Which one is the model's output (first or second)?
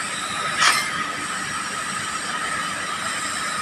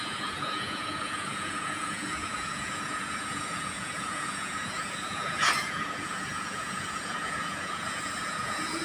second